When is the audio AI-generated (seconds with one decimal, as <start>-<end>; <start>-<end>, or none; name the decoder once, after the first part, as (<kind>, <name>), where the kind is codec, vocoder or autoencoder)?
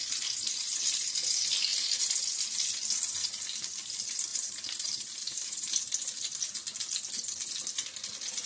4.3-5.9 (vocoder, BigVGAN v2)